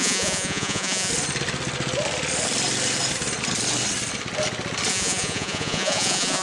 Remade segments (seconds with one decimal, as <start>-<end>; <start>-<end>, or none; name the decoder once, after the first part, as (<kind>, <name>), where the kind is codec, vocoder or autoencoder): 0.0-1.1 (vocoder, Vocos); 4.9-6.4